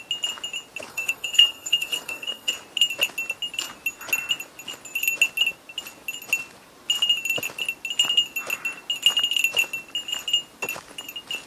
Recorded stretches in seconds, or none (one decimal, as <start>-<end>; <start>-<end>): 0.0-0.9; 2.5-11.5